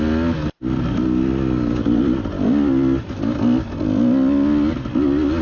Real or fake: real